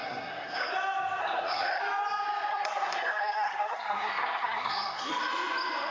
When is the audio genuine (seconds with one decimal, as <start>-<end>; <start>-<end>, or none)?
0.7-1.2; 1.8-2.5; 5.1-5.9